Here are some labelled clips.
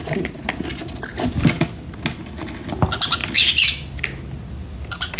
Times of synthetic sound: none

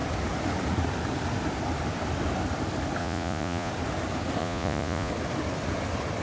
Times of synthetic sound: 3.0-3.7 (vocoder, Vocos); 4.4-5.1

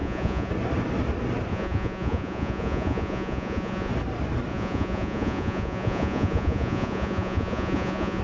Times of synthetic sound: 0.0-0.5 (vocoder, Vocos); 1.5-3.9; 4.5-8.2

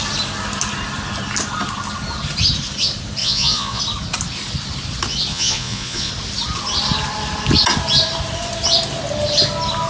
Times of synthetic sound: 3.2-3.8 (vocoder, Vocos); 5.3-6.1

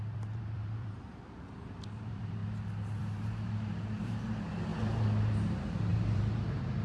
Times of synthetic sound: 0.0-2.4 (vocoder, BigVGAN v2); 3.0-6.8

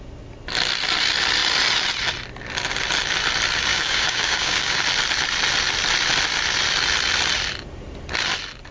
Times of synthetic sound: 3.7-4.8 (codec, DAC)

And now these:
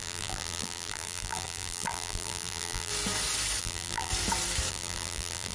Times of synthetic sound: 0.0-2.9 (vocoder, BigVGAN v2); 3.6-4.1; 4.7-5.5